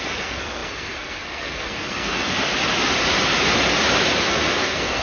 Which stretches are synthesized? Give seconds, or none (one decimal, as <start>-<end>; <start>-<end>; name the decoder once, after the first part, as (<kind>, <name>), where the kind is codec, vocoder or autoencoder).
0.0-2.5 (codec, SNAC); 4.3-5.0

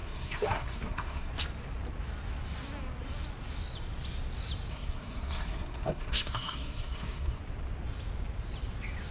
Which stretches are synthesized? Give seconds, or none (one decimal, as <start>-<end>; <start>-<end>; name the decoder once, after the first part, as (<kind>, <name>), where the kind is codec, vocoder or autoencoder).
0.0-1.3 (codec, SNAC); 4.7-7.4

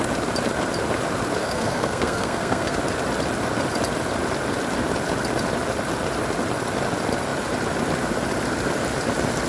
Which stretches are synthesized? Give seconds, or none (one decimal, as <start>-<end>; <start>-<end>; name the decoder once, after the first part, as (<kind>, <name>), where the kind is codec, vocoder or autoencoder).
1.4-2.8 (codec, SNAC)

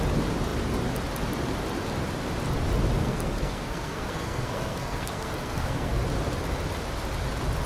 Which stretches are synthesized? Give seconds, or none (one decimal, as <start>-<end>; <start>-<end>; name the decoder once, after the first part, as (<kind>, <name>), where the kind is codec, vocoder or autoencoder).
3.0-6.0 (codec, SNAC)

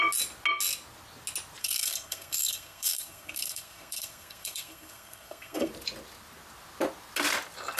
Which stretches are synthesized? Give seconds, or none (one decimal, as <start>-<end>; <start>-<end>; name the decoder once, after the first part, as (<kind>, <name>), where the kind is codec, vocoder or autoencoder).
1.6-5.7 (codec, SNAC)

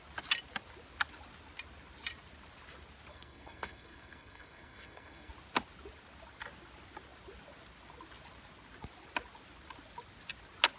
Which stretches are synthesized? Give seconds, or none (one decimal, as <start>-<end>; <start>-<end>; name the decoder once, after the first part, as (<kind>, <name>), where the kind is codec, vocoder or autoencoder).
3.1-5.3 (codec, SNAC)